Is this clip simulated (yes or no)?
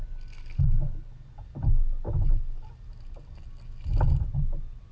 no